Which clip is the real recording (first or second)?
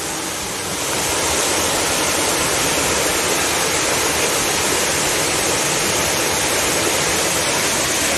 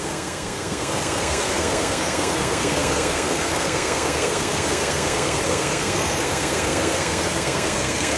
first